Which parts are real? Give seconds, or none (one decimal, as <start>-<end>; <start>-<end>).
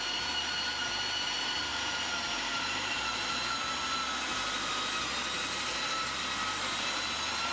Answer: 0.0-1.7; 4.7-5.4; 6.2-7.5